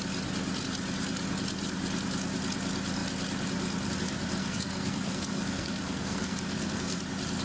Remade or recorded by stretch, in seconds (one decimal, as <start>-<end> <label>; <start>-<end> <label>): 0.0-4.4 recorded; 4.4-7.0 remade; 7.0-7.4 recorded